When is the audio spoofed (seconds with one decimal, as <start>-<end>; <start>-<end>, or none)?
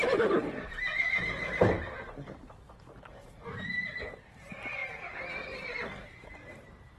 0.0-0.9; 4.0-4.8; 6.0-7.0